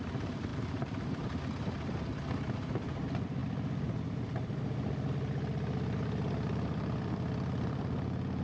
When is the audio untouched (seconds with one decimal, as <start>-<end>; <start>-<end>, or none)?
0.5-1.1